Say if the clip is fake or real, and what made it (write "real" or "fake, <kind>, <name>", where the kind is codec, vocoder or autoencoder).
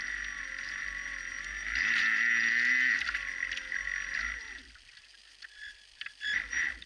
real